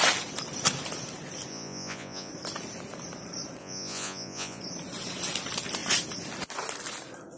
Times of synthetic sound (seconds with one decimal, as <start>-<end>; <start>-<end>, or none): 1.5-2.3; 3.6-4.6